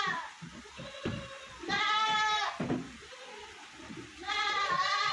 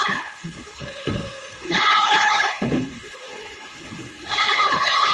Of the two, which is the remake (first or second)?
second